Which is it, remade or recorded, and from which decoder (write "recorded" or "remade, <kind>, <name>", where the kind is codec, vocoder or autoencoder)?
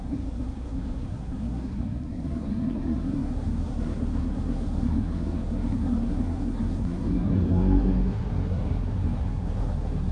remade, codec, SNAC